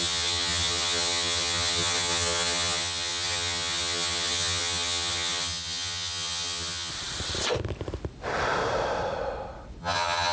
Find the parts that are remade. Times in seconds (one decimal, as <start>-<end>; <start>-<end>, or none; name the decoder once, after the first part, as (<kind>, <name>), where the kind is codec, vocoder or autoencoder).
0.0-6.9 (vocoder, HiFi-GAN); 9.8-10.3